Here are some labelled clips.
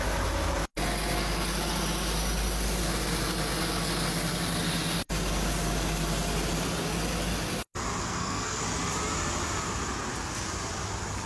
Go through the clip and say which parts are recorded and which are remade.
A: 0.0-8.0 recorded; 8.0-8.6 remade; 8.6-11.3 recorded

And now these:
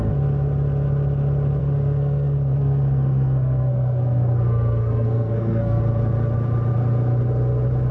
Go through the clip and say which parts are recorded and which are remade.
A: 0.0-1.6 recorded; 1.6-5.8 remade; 5.8-7.9 recorded

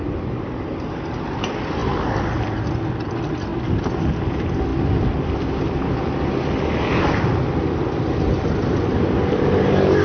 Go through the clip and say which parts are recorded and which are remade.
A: 0.0-10.0 recorded

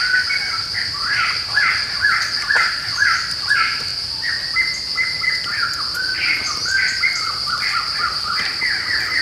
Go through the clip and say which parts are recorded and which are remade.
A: 0.0-9.2 recorded

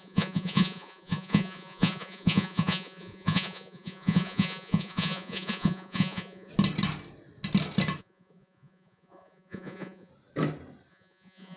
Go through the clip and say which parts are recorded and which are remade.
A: 0.0-6.5 remade; 6.5-8.0 recorded; 8.0-10.1 remade; 10.1-10.9 recorded; 10.9-11.6 remade